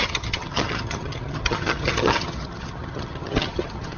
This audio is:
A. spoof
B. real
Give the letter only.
A